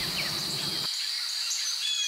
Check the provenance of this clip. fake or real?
real